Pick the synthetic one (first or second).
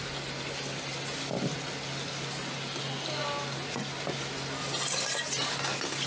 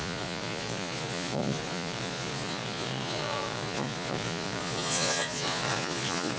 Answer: second